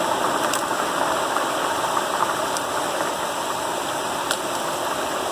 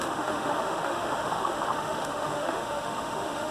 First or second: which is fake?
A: second